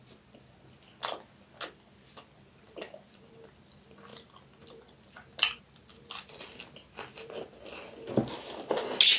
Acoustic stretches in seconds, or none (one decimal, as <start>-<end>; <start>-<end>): 0.0-9.2